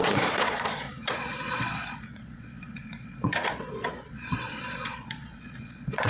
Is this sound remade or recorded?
remade